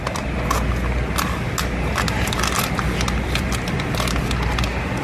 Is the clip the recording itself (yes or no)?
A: yes